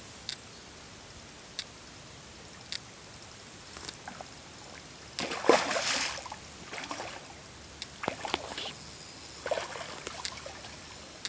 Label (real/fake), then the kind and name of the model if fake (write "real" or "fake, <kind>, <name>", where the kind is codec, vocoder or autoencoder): real